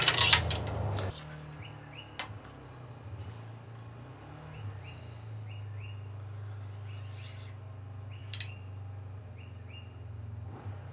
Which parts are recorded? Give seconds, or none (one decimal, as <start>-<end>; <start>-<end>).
0.0-10.9